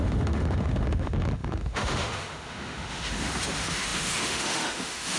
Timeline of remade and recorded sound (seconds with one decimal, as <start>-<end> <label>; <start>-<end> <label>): 0.0-5.2 remade